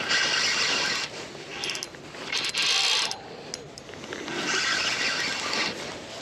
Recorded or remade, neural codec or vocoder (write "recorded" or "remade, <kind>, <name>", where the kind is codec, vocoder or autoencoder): recorded